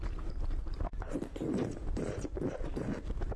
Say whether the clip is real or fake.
fake